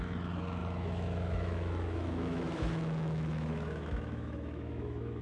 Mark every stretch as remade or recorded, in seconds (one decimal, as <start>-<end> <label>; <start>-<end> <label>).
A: 0.0-5.2 remade